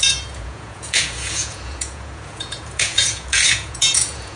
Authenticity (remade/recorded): remade